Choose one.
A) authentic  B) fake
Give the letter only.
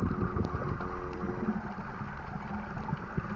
A